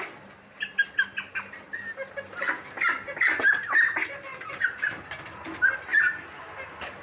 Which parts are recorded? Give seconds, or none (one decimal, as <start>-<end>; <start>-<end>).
0.0-4.3; 5.2-7.0